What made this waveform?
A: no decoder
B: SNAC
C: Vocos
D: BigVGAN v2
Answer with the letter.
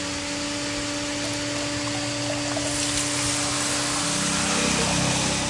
A